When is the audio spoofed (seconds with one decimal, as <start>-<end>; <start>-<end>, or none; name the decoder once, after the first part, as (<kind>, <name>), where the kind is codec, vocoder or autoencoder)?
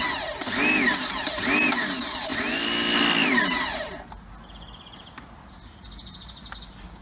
none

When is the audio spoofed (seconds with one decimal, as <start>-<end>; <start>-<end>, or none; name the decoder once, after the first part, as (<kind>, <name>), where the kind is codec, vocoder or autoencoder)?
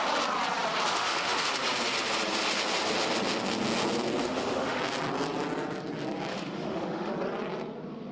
0.9-1.5 (autoencoder, DAC-VAE); 4.2-4.8; 6.3-7.1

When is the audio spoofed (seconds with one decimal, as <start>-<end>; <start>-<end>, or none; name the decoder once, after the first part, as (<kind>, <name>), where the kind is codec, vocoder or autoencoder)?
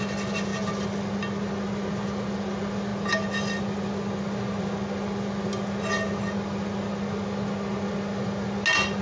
none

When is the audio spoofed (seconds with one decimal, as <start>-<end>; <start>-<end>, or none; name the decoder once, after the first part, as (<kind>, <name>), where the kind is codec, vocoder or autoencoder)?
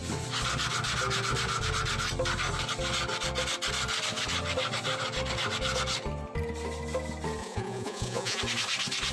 7.4-8.4 (vocoder, Vocos)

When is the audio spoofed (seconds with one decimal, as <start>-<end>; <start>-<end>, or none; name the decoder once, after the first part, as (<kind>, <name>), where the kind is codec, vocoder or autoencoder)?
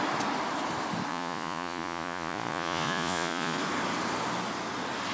1.1-3.6 (vocoder, Vocos)